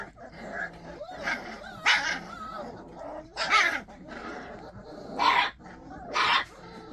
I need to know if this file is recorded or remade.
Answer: remade